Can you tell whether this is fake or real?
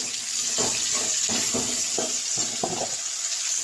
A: real